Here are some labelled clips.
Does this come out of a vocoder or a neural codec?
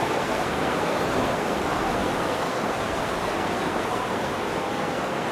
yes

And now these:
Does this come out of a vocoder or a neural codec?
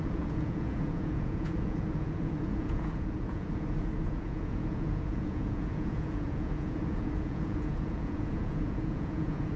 yes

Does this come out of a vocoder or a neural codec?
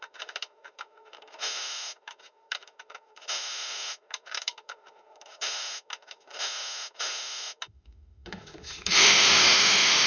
yes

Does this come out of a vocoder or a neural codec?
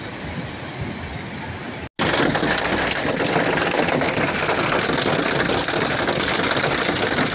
no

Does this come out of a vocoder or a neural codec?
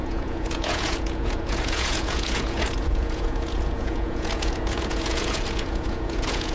yes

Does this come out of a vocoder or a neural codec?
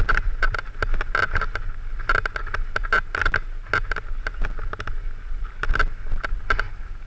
no